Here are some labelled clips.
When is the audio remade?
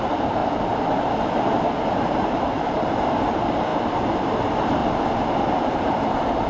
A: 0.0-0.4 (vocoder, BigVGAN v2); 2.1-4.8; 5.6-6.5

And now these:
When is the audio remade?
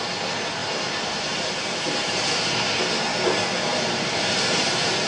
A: 0.6-2.8 (vocoder, BigVGAN v2); 3.7-5.1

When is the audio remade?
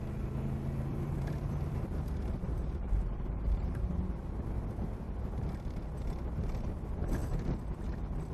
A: 0.9-3.9 (vocoder, BigVGAN v2)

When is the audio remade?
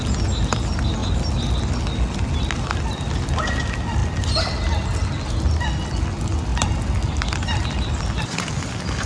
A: 1.0-1.6 (vocoder, BigVGAN v2); 6.5-8.5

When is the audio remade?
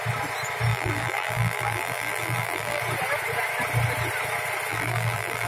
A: 0.7-2.8 (vocoder, BigVGAN v2); 4.7-5.5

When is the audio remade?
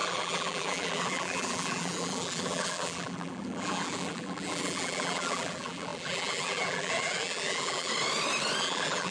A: 0.0-7.9 (vocoder, BigVGAN v2); 8.6-9.1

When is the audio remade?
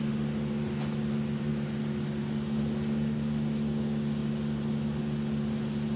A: none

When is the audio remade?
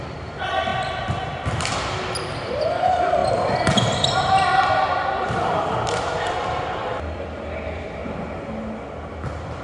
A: 0.0-0.7 (vocoder, BigVGAN v2); 2.2-8.0; 9.1-9.6